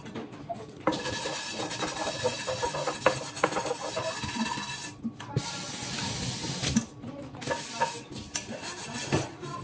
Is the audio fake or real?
real